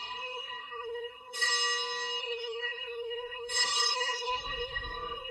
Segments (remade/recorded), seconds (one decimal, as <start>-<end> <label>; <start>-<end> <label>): 0.0-1.5 remade; 1.5-2.2 recorded; 2.2-5.3 remade